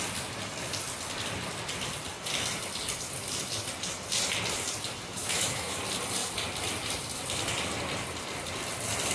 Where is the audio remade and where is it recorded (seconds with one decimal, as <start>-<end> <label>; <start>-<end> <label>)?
0.0-5.2 recorded; 5.2-5.8 remade; 5.8-9.1 recorded